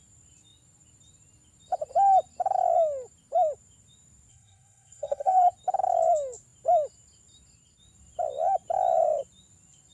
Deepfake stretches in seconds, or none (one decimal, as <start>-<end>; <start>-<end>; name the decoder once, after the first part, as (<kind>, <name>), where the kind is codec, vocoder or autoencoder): 4.3-5.5 (codec, SNAC)